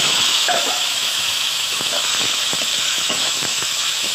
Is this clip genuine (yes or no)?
no